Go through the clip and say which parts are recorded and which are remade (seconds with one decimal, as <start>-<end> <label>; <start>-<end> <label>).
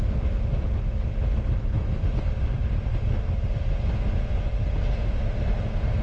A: 0.0-6.0 recorded